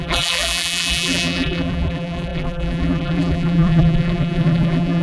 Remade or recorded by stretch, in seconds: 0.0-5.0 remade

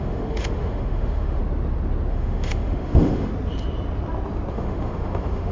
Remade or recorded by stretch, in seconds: 0.0-1.4 remade; 1.4-2.1 recorded; 2.1-3.3 remade; 3.3-4.5 recorded; 4.5-5.5 remade